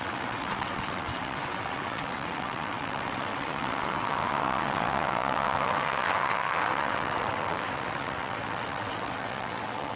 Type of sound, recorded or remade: remade